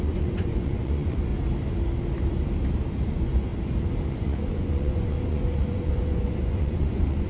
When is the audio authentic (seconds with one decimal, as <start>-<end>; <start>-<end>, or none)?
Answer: 1.3-3.1; 3.5-4.1